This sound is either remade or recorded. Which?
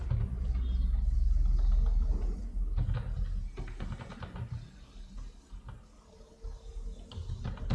recorded